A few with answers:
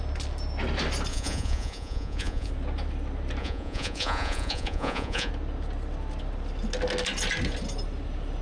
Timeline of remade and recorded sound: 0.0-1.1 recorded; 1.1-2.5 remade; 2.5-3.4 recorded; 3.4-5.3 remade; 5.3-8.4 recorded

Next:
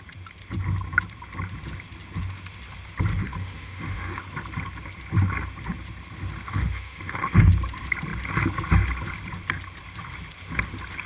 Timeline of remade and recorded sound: 0.0-3.1 recorded; 3.1-4.2 remade; 4.2-6.5 recorded; 6.5-7.5 remade; 7.5-11.1 recorded

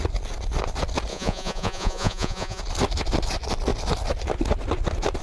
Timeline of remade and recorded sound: 0.0-1.1 recorded; 1.1-2.6 remade; 2.6-5.2 recorded

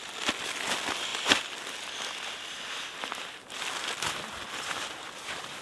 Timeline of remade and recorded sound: 0.0-5.6 recorded